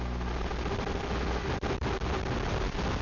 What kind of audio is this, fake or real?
real